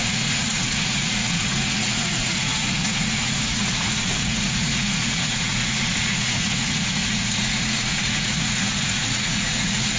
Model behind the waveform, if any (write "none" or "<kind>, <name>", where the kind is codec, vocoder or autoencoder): vocoder, Vocos